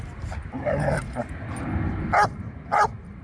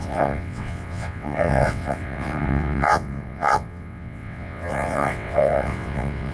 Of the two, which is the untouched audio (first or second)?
first